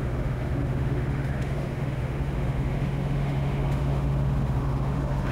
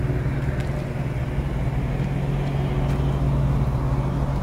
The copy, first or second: first